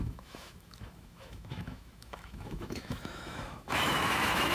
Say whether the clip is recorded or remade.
remade